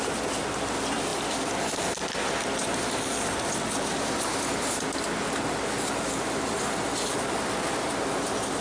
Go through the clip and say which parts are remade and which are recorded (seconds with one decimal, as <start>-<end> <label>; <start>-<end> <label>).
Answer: 0.0-8.6 recorded

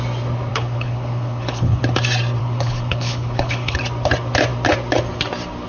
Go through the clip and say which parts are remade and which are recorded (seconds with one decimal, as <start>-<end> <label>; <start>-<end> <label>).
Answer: 0.0-0.5 recorded; 0.5-1.8 remade; 1.8-2.4 recorded; 2.4-3.8 remade; 3.8-5.7 recorded

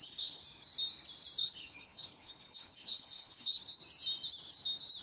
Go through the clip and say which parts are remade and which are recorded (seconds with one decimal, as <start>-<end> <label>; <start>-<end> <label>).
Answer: 0.0-0.4 remade; 0.4-1.4 recorded; 1.4-3.6 remade; 3.6-5.0 recorded

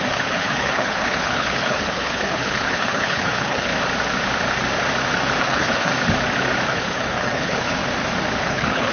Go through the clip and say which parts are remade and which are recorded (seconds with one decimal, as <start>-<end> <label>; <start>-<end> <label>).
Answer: 0.0-3.7 remade; 3.7-5.4 recorded; 5.4-5.9 remade; 5.9-6.7 recorded; 6.7-7.8 remade; 7.8-8.4 recorded; 8.4-8.9 remade

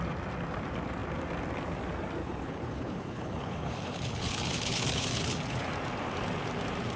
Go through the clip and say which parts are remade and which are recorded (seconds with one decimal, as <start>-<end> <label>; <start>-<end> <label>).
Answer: 0.0-2.2 recorded; 2.2-5.7 remade; 5.7-7.0 recorded

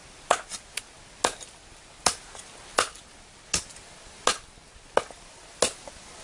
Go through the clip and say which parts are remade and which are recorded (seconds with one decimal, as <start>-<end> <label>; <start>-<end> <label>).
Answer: 0.0-6.2 recorded

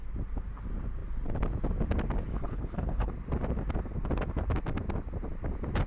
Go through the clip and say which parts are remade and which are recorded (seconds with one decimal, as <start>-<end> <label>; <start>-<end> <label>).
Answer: 0.0-2.3 recorded; 2.3-3.1 remade; 3.1-5.9 recorded